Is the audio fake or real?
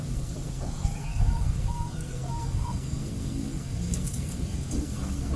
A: fake